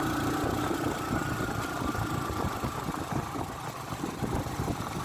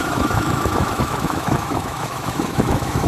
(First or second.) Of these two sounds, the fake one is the second